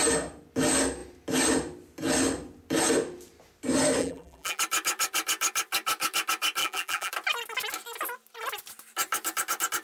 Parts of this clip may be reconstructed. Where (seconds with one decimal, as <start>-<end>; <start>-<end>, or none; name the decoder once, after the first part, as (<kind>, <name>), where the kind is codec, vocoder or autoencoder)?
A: 4.0-4.6 (vocoder, BigVGAN v2); 6.6-7.1